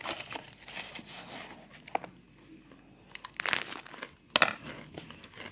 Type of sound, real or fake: real